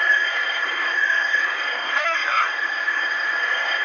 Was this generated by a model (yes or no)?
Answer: yes